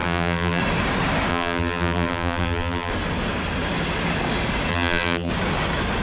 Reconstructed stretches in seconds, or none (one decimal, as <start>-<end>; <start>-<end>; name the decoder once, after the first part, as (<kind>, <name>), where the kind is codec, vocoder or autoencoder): 0.0-0.6 (vocoder, BigVGAN v2); 1.3-2.9; 4.7-5.3